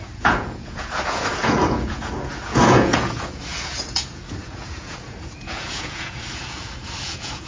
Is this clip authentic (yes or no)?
no